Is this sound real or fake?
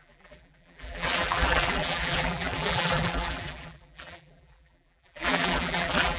fake